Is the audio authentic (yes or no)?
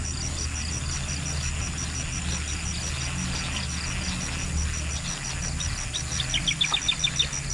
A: yes